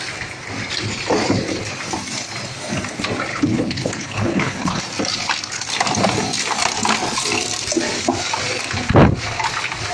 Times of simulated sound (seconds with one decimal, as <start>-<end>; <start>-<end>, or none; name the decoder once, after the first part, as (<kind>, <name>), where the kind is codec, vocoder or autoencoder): 3.3-4.8 (codec, HILCodec)